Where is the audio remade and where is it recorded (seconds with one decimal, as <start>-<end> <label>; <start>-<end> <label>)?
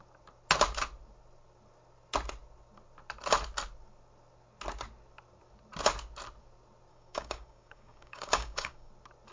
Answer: 0.0-6.9 recorded; 6.9-8.9 remade; 8.9-9.3 recorded